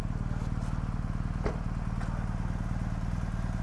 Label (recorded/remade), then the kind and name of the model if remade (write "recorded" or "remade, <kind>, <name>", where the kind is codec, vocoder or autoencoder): recorded